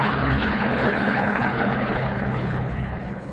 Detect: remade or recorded remade